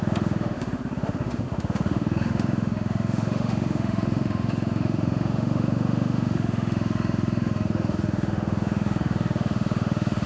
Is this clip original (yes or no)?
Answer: no